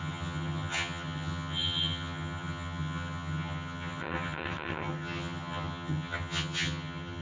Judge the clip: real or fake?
fake